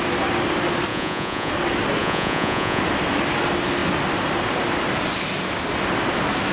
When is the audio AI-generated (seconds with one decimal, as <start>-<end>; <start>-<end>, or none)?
0.9-1.5; 2.0-2.8